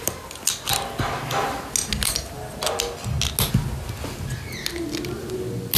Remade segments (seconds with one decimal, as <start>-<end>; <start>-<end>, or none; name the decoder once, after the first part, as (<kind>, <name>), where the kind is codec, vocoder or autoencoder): none